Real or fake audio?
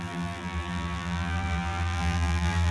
fake